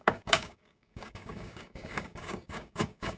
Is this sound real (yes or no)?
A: no